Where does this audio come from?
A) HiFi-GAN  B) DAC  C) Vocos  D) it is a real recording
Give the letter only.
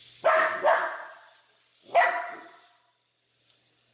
D